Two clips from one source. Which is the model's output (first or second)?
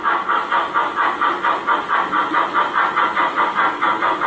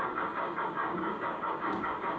second